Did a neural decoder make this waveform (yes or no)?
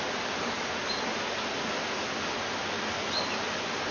no